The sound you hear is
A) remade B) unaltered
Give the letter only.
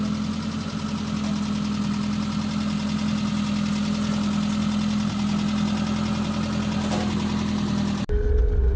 B